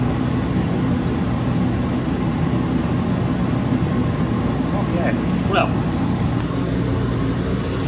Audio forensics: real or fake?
real